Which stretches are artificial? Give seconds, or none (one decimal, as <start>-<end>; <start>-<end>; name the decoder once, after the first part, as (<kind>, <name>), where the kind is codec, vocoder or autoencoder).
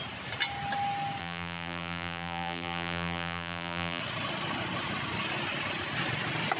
1.2-4.0 (vocoder, BigVGAN v2)